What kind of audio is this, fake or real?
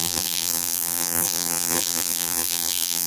fake